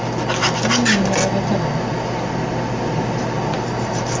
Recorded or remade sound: recorded